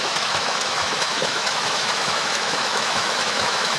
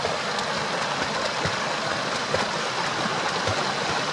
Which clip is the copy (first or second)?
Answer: first